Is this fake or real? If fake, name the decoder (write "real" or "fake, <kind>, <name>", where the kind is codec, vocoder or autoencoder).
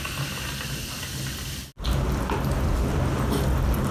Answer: real